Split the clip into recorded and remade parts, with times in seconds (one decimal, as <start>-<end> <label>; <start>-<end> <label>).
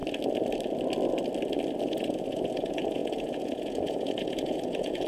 0.0-1.8 recorded; 1.8-5.1 remade